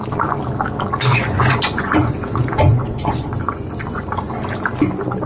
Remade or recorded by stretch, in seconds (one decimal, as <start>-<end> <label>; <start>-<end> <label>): 0.0-1.1 recorded; 1.1-4.3 remade; 4.3-5.3 recorded

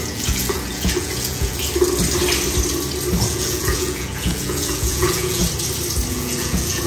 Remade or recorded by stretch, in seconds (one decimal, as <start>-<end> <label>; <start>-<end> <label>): 0.0-1.6 remade; 1.6-3.3 recorded; 3.3-5.4 remade; 5.4-6.1 recorded; 6.1-6.9 remade

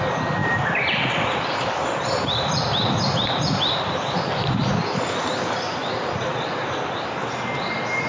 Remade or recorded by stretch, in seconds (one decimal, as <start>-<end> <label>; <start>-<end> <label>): 0.0-0.4 recorded; 0.4-5.2 remade; 5.2-8.1 recorded

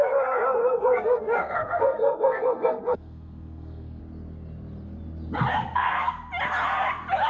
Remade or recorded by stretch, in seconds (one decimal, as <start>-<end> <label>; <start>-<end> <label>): 0.0-0.6 recorded; 0.6-4.0 remade; 4.0-5.6 recorded; 5.6-6.3 remade; 6.3-7.3 recorded

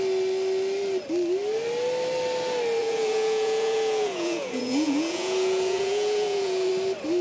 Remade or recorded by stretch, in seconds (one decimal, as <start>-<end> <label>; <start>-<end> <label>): 0.0-2.8 recorded; 2.8-6.7 remade; 6.7-7.2 recorded